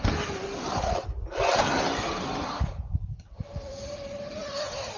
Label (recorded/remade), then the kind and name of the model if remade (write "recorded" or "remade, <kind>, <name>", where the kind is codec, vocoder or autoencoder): recorded